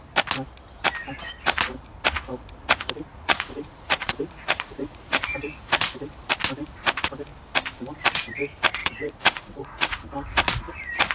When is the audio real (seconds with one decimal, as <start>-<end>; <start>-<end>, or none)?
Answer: 0.0-3.1; 5.2-8.8; 10.0-11.1